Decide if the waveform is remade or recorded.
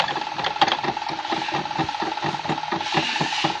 recorded